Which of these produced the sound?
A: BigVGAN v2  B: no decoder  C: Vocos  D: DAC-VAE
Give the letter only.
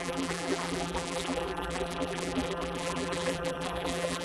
A